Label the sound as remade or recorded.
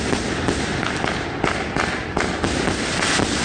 recorded